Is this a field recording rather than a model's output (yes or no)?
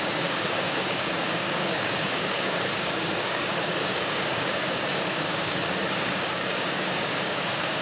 no